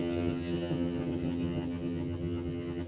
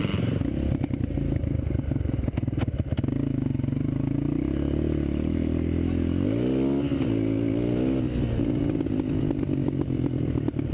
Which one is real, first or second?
second